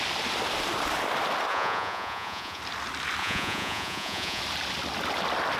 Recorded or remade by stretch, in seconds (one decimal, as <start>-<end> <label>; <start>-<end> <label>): 0.0-1.5 recorded; 1.5-2.6 remade; 2.6-3.2 recorded; 3.2-4.4 remade; 4.4-5.6 recorded